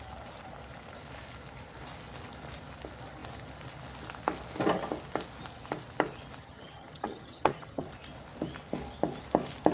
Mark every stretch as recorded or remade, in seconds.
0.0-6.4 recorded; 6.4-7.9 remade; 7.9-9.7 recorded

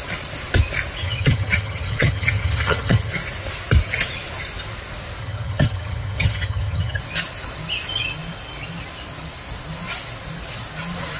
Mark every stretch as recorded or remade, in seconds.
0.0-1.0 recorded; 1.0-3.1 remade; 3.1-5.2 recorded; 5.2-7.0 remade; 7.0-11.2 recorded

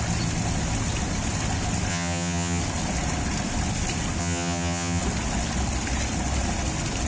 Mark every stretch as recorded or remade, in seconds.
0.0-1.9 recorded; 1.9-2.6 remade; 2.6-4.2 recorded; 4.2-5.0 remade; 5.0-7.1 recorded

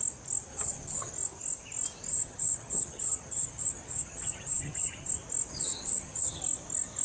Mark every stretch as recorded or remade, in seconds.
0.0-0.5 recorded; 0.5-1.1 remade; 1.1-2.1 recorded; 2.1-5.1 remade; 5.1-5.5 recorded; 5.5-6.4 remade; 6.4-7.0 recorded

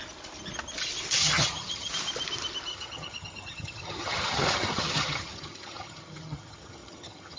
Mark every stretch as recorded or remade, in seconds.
0.0-1.2 recorded; 1.2-1.9 remade; 1.9-2.7 recorded; 2.7-7.4 remade

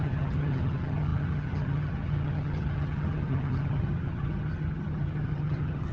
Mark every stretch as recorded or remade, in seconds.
0.0-5.9 remade

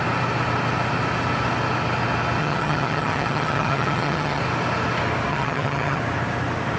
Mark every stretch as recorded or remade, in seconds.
0.0-2.4 recorded; 2.4-4.4 remade; 4.4-5.3 recorded; 5.3-6.0 remade; 6.0-6.8 recorded